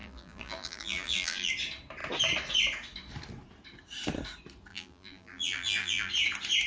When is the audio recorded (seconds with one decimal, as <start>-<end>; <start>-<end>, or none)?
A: 1.5-4.7; 6.1-6.7